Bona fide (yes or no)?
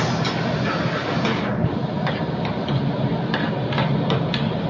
yes